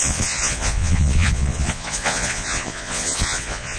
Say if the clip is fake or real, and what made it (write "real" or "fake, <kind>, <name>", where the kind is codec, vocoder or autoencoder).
fake, vocoder, Vocos